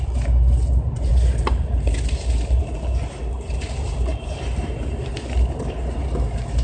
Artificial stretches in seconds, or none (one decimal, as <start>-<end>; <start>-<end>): none